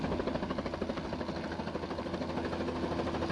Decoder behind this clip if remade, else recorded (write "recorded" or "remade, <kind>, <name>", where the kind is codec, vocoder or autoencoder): recorded